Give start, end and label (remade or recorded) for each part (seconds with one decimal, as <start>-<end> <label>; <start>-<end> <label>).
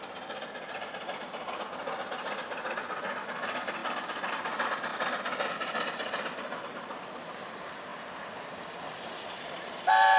0.0-3.8 remade; 3.8-4.3 recorded; 4.3-7.9 remade; 7.9-9.4 recorded; 9.4-10.2 remade